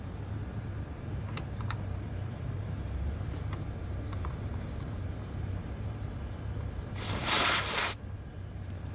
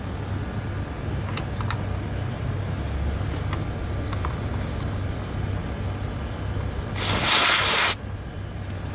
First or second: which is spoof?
first